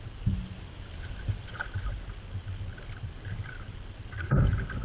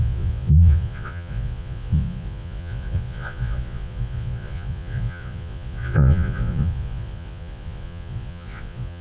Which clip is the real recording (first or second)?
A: first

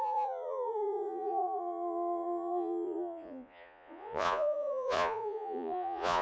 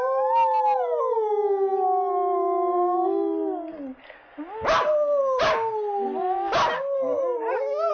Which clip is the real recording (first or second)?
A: second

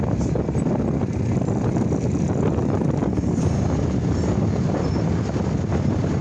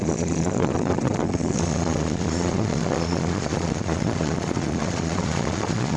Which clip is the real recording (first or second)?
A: first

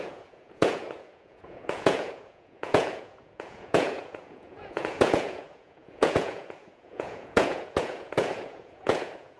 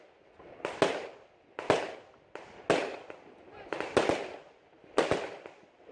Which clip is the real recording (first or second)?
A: second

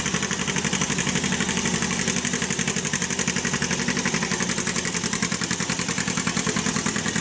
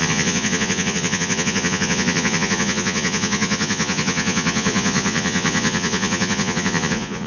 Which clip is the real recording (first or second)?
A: first